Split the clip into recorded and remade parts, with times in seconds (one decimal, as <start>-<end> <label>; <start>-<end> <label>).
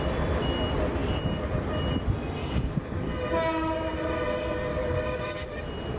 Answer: 0.0-2.4 recorded; 2.4-3.1 remade; 3.1-4.7 recorded; 4.7-5.6 remade; 5.6-6.0 recorded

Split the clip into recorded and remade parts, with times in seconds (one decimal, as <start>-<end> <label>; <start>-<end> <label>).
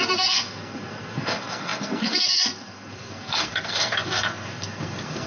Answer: 0.0-5.3 remade